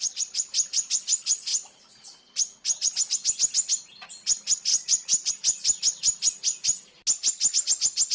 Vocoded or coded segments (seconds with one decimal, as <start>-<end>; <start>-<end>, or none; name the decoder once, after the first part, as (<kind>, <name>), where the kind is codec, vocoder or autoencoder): 4.7-5.3 (vocoder, BigVGAN v2)